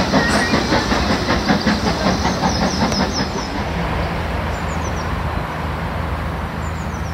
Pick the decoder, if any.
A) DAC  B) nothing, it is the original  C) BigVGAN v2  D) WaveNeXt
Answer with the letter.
B